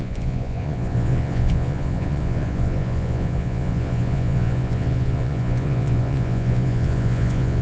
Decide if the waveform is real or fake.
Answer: fake